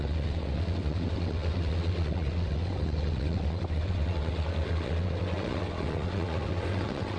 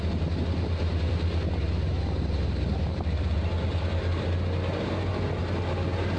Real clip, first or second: second